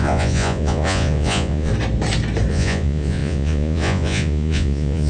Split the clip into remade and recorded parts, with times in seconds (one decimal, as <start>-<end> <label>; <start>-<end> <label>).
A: 0.0-1.7 remade; 1.7-2.5 recorded; 2.5-5.1 remade